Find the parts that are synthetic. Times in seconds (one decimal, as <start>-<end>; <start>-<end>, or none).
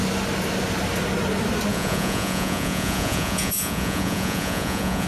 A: 1.7-5.1